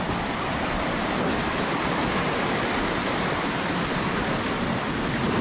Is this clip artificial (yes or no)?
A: no